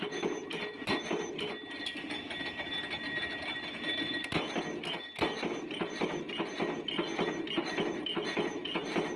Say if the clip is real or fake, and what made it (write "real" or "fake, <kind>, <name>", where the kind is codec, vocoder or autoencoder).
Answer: real